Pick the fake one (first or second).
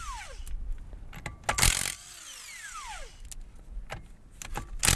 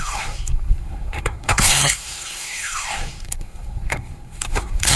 second